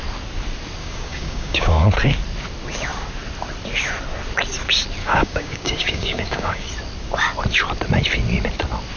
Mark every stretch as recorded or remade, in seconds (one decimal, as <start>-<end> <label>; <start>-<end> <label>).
0.0-0.8 recorded; 0.8-1.9 remade; 1.9-5.0 recorded; 5.0-6.7 remade; 6.7-9.0 recorded

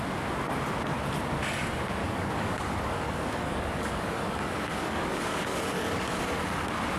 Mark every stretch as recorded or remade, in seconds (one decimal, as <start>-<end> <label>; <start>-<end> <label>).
0.0-2.0 recorded; 2.0-6.2 remade; 6.2-7.0 recorded

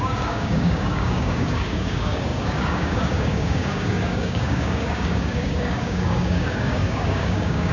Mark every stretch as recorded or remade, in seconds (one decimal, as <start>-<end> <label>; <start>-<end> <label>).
0.0-7.7 remade

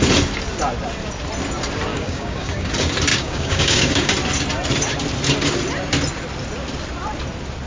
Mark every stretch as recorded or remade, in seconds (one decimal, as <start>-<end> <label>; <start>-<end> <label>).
0.0-1.9 recorded; 1.9-2.7 remade; 2.7-3.1 recorded; 3.1-4.1 remade; 4.1-7.7 recorded

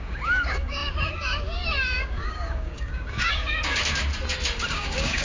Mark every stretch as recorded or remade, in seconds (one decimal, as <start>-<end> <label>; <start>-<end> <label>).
0.0-4.1 remade; 4.1-4.7 recorded; 4.7-5.2 remade

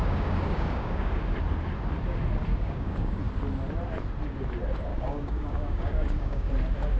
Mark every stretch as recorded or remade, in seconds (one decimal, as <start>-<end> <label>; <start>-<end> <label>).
0.0-1.2 remade; 1.2-2.5 recorded; 2.5-3.2 remade; 3.2-4.9 recorded; 4.9-6.5 remade; 6.5-7.0 recorded

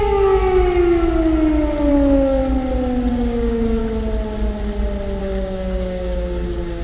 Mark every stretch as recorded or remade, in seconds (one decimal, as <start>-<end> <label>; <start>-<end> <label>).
0.0-0.4 remade; 0.4-1.9 recorded; 1.9-2.4 remade; 2.4-3.1 recorded; 3.1-3.8 remade; 3.8-5.2 recorded; 5.2-6.8 remade